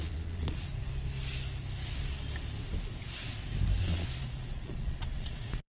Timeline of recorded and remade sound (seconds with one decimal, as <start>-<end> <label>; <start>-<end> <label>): 0.0-0.7 remade; 0.7-3.8 recorded; 3.8-5.7 remade